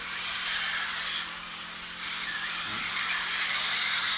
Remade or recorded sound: remade